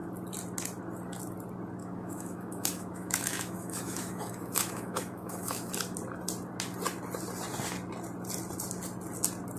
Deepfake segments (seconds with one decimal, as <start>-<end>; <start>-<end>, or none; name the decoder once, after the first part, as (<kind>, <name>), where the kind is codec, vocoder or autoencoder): 1.8-5.7 (autoencoder, DAC-VAE)

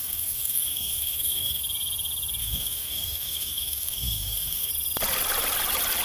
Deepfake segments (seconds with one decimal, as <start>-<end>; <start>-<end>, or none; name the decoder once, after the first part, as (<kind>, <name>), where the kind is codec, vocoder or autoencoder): 0.0-1.6 (codec, DAC); 2.4-4.7

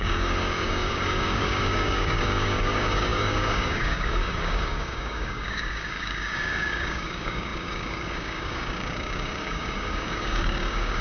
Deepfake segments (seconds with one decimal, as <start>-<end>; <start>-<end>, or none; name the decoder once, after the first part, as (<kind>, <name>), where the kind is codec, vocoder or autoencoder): 0.0-11.0 (codec, DAC)

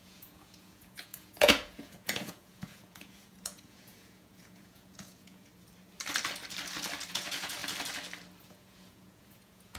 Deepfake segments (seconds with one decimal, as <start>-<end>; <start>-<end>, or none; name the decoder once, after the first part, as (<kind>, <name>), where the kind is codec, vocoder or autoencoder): 0.0-5.5 (vocoder, Vocos); 7.1-7.6; 8.4-9.8

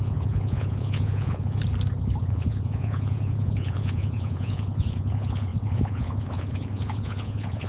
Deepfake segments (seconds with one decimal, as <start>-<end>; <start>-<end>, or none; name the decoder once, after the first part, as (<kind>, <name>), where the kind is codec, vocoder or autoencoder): 0.0-1.6 (vocoder, Vocos); 2.2-7.7

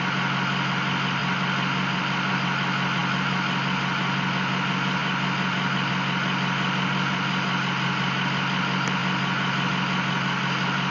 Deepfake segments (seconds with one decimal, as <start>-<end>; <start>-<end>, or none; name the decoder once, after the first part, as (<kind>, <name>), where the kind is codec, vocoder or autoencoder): none

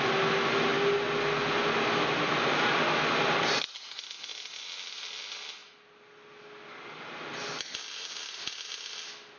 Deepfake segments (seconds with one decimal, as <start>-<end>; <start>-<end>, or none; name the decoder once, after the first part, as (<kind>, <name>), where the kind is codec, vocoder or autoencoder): none

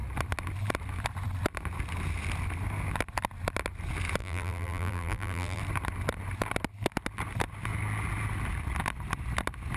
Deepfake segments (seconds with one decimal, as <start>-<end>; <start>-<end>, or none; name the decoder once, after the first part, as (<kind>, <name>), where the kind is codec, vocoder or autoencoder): 4.2-5.6 (vocoder, BigVGAN v2)